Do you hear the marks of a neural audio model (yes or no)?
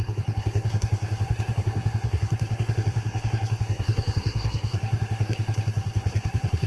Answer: yes